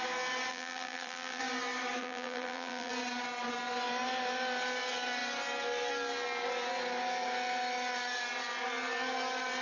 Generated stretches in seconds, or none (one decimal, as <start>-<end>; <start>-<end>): 0.5-1.4; 2.0-2.9